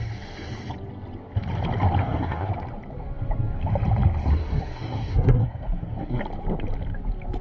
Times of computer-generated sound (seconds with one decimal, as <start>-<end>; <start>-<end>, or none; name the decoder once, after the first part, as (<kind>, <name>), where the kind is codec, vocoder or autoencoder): 2.0-2.5 (codec, SNAC); 4.3-6.2